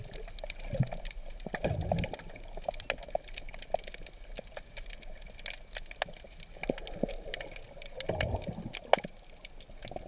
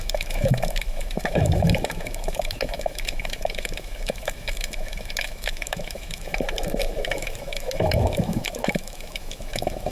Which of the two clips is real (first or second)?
first